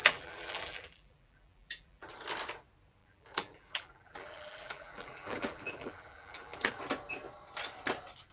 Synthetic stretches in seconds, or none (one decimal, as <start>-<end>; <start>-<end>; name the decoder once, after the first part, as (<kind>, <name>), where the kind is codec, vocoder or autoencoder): 0.0-2.1 (vocoder, BigVGAN v2); 3.0-6.7